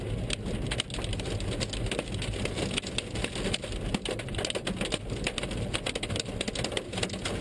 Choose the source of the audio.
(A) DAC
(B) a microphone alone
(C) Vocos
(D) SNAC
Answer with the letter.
B